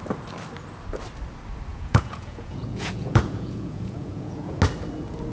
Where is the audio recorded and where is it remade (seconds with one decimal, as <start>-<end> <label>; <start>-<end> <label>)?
0.0-1.7 recorded; 1.7-4.6 remade; 4.6-5.3 recorded